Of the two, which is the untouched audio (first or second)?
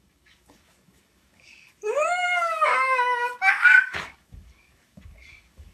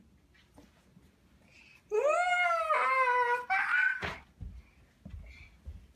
second